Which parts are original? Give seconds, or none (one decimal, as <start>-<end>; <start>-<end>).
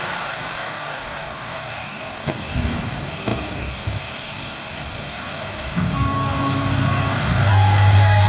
none